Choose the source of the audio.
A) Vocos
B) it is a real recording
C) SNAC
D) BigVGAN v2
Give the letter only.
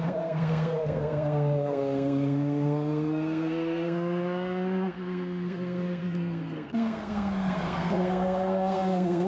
C